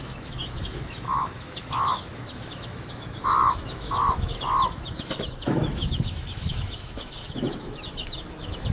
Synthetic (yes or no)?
yes